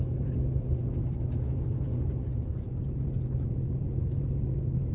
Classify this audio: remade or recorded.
recorded